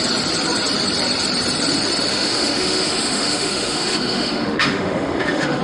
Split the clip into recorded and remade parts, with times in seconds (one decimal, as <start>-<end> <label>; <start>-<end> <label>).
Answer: 0.0-2.1 recorded; 2.1-5.6 remade